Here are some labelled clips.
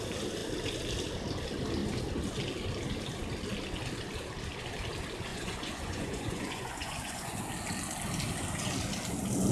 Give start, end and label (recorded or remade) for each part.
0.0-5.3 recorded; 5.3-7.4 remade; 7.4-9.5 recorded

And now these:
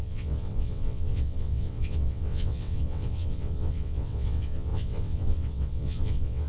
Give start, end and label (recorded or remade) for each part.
0.0-6.5 remade

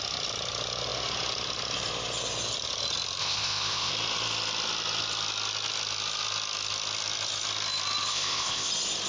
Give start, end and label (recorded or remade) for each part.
0.0-3.2 recorded; 3.2-3.9 remade; 3.9-8.1 recorded; 8.1-8.7 remade; 8.7-9.1 recorded

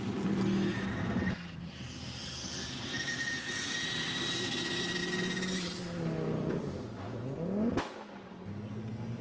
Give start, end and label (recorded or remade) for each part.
0.0-9.2 recorded

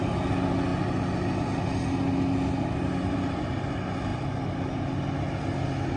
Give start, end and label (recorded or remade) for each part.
0.0-6.0 recorded

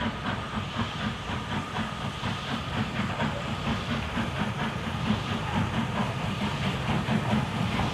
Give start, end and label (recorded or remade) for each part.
0.0-7.9 remade

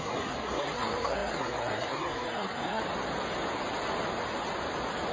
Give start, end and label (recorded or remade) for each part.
0.0-2.8 remade; 2.8-5.1 recorded